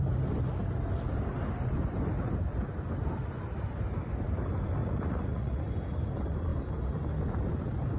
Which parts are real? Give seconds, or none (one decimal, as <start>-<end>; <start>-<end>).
0.0-4.8; 5.6-8.0